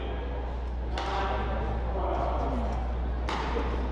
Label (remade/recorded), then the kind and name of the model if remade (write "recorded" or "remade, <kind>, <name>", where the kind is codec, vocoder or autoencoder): recorded